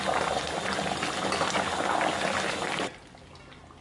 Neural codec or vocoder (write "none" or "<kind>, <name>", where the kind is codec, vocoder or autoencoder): none